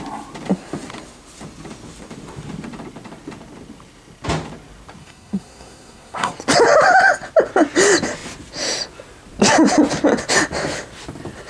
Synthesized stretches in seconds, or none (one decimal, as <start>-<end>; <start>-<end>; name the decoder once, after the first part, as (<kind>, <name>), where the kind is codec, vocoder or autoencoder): 5.0-6.3 (codec, SNAC)